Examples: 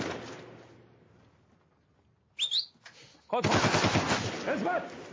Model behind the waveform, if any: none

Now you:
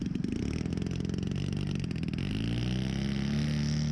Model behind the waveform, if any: none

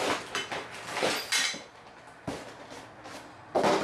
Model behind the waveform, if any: none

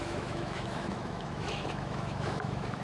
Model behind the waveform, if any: autoencoder, DAC-VAE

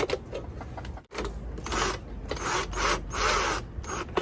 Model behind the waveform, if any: none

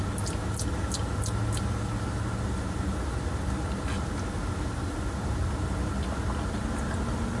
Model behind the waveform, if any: none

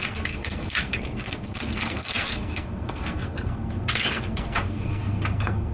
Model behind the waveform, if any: codec, SNAC